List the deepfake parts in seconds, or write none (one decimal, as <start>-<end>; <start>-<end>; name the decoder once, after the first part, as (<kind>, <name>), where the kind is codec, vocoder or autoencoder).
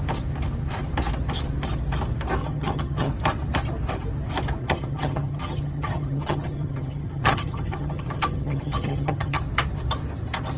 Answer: 2.4-3.1 (vocoder, HiFi-GAN); 4.6-9.4